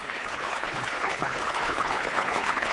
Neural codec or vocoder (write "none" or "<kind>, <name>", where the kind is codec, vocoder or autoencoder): codec, HILCodec